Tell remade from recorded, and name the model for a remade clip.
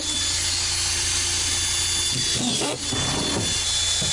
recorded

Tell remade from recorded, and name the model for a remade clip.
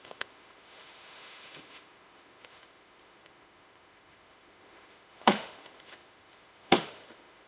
remade, autoencoder, DAC-VAE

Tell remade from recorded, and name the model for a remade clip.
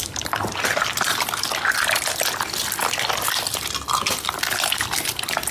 recorded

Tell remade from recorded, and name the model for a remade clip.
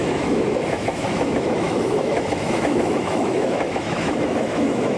remade, autoencoder, DAC-VAE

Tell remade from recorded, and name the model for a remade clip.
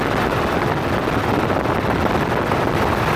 recorded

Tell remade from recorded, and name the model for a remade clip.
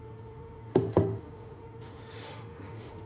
remade, autoencoder, DAC-VAE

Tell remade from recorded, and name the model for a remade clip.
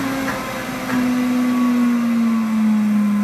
recorded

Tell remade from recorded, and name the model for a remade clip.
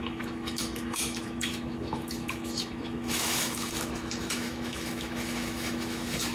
remade, autoencoder, DAC-VAE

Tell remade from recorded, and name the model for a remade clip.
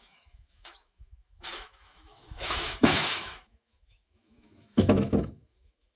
remade, autoencoder, DAC-VAE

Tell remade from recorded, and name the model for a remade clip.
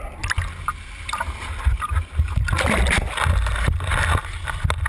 recorded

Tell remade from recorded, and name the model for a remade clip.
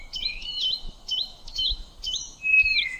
remade, autoencoder, DAC-VAE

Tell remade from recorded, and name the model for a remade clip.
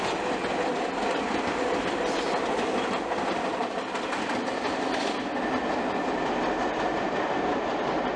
recorded